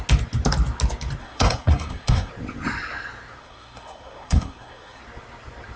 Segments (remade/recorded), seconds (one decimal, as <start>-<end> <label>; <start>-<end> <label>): 0.0-1.2 recorded; 1.2-2.3 remade; 2.3-3.4 recorded; 3.4-5.0 remade; 5.0-5.8 recorded